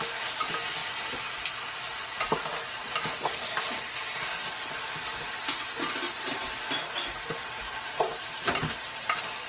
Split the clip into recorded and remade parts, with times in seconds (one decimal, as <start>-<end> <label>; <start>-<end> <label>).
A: 0.0-0.8 recorded; 0.8-1.5 remade; 1.5-2.8 recorded; 2.8-3.8 remade; 3.8-7.4 recorded; 7.4-8.6 remade; 8.6-9.5 recorded